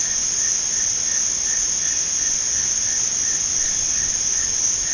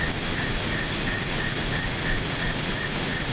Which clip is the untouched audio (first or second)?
first